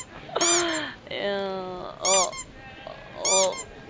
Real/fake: real